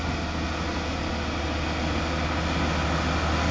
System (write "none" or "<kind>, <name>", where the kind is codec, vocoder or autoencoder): none